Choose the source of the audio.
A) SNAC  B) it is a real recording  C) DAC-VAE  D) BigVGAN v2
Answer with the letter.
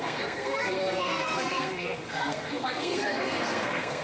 A